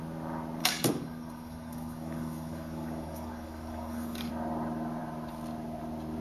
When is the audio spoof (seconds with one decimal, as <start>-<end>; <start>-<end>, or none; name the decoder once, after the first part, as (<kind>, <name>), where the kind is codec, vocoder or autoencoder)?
0.6-4.3 (codec, DAC)